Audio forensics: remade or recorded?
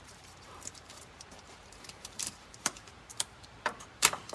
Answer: remade